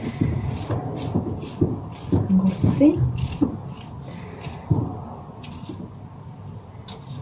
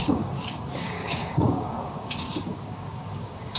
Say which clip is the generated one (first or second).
second